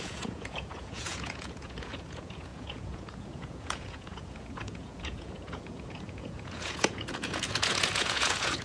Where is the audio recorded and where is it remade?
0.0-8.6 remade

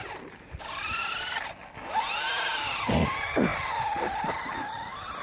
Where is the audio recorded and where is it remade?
0.0-5.2 recorded

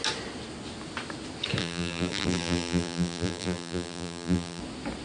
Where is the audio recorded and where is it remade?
0.0-1.6 recorded; 1.6-4.6 remade; 4.6-5.0 recorded